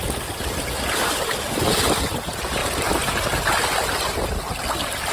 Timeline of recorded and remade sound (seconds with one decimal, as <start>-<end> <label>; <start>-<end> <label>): 0.0-5.1 recorded